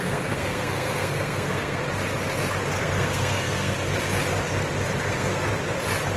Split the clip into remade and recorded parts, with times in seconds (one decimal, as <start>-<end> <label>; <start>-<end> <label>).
0.0-1.8 remade; 1.8-2.8 recorded; 2.8-3.8 remade; 3.8-5.0 recorded; 5.0-5.5 remade; 5.5-6.2 recorded